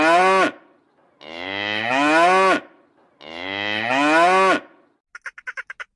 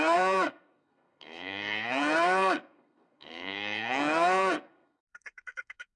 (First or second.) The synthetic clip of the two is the second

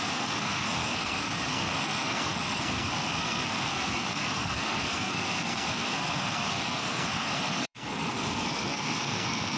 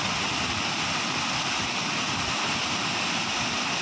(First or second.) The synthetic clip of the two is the first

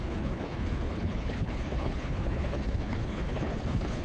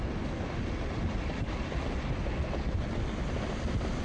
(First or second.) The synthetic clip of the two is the first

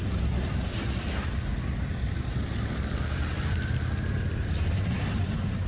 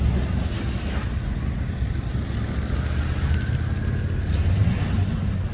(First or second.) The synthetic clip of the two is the first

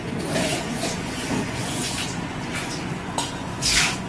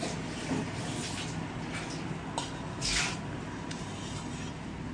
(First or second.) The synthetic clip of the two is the first